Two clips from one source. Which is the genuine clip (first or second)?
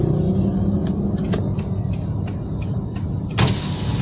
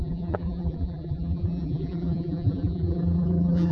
first